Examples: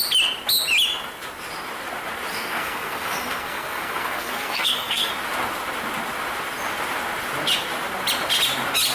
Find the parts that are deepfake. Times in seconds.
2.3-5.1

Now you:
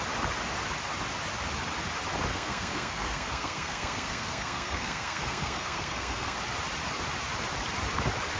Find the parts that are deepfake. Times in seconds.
2.3-6.4

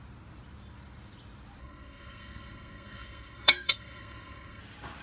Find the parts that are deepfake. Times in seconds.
1.6-4.6